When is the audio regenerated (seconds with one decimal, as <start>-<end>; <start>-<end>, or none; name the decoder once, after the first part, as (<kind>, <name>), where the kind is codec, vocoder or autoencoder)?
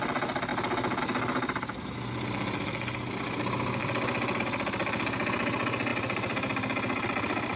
3.8-4.4 (vocoder, BigVGAN v2); 5.9-7.6